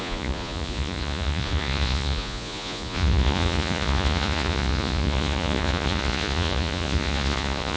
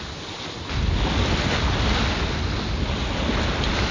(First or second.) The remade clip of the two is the first